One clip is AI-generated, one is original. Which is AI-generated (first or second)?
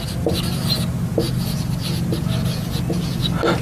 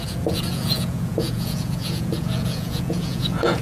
second